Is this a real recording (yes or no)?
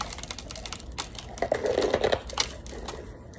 yes